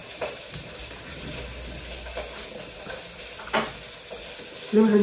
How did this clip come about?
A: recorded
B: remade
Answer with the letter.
A